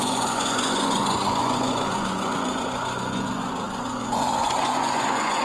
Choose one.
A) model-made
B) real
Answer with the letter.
A